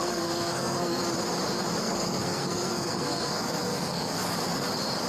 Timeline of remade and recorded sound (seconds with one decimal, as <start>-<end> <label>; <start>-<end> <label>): 0.0-1.0 remade; 1.0-1.8 recorded; 1.8-4.2 remade; 4.2-5.1 recorded